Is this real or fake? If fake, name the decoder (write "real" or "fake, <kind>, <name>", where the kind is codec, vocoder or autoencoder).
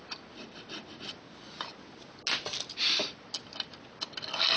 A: real